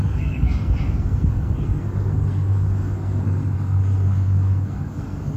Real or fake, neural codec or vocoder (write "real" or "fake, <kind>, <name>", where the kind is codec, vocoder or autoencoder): fake, codec, SNAC